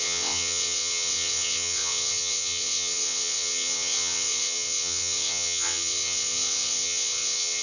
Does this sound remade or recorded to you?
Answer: remade